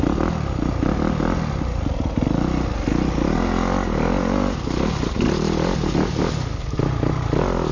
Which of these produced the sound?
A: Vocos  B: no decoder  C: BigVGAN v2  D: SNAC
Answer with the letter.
B